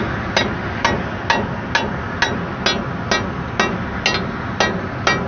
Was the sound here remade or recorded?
recorded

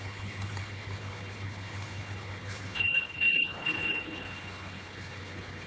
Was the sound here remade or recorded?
remade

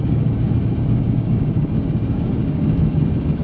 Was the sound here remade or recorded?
remade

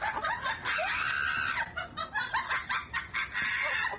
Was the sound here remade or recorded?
recorded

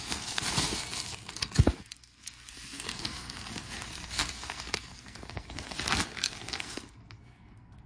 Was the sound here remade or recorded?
remade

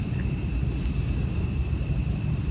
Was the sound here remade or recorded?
recorded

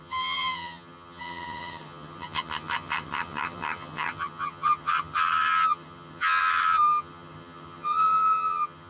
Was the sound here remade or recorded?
remade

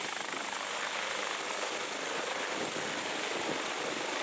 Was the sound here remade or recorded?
recorded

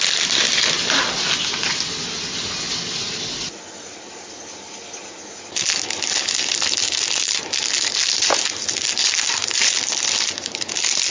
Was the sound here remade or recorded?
recorded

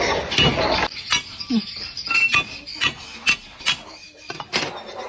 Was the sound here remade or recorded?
recorded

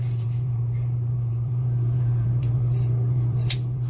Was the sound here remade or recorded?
remade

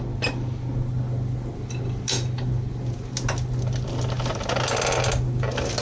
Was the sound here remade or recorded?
recorded